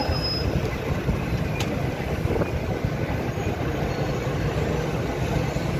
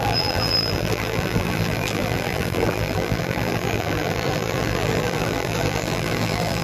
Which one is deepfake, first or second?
second